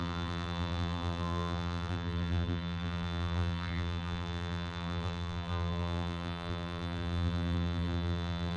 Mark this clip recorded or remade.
remade